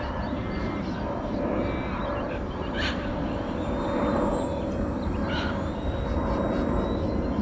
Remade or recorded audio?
remade